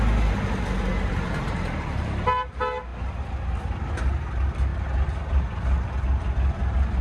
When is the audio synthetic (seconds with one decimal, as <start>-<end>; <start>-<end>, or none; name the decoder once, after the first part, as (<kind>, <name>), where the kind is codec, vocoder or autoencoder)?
0.9-2.2 (vocoder, BigVGAN v2)